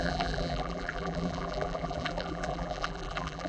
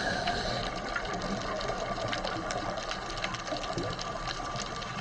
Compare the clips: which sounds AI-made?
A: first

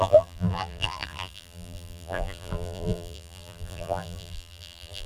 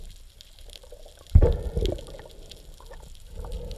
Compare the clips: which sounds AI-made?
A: first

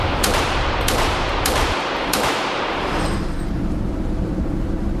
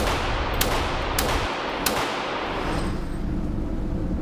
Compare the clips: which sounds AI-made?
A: first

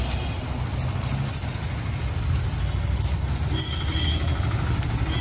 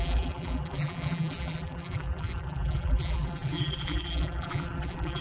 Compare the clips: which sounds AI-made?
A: second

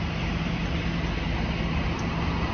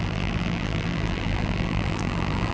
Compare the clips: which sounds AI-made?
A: second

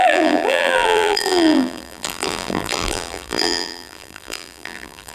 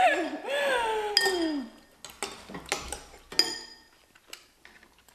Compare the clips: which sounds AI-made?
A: first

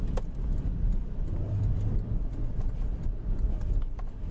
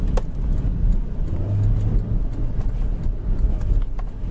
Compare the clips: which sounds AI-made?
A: first